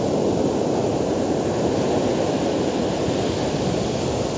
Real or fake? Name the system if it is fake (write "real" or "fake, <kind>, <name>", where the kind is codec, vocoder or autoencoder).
real